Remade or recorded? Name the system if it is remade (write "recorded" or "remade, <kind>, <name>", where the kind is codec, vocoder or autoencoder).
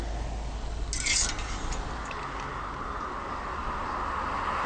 recorded